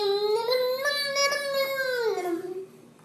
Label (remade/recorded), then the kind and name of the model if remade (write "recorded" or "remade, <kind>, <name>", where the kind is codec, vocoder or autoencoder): recorded